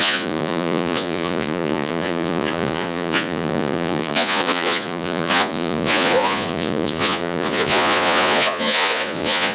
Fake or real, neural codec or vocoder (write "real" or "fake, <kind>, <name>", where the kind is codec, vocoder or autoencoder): fake, vocoder, Vocos